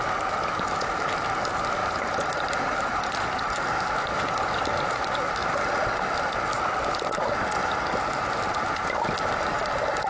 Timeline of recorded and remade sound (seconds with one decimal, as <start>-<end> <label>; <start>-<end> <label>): 0.0-1.8 recorded; 1.8-3.1 remade; 3.1-10.1 recorded